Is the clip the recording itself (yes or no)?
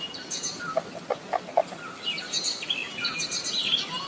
yes